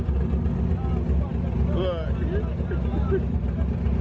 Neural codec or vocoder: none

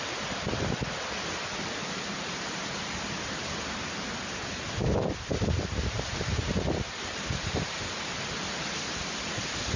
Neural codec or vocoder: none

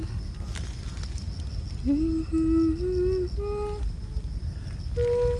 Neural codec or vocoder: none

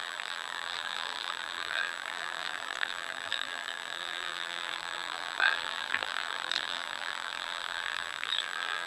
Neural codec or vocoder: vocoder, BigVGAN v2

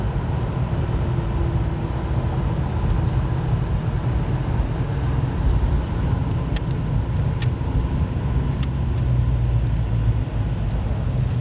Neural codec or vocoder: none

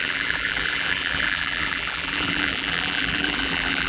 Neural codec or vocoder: vocoder, BigVGAN v2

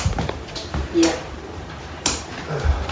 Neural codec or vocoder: vocoder, BigVGAN v2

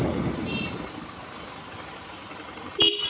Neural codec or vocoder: none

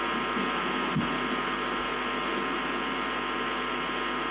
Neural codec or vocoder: none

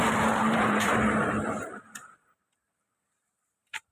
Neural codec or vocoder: vocoder, BigVGAN v2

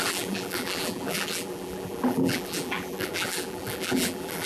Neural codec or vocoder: vocoder, BigVGAN v2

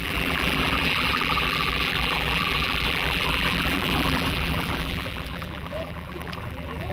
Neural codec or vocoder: vocoder, BigVGAN v2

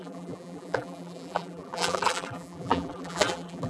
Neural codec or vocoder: vocoder, BigVGAN v2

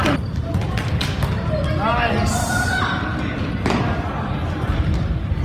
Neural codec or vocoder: none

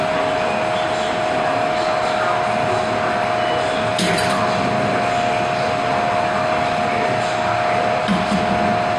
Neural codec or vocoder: none